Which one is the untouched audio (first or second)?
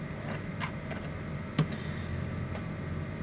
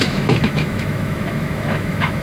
first